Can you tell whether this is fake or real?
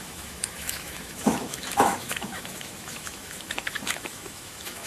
fake